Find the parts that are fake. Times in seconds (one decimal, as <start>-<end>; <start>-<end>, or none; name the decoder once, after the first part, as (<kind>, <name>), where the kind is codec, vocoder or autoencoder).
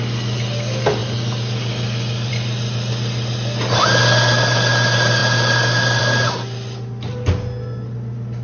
none